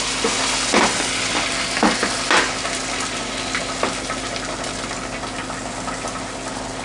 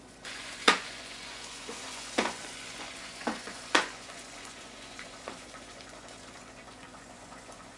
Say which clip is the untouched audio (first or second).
first